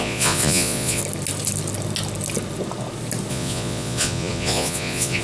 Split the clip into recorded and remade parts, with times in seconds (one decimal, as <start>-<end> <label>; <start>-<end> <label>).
0.0-1.0 remade; 1.0-3.3 recorded; 3.3-5.2 remade